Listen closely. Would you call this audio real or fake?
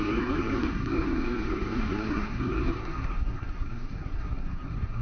fake